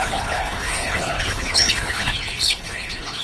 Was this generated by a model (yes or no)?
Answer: yes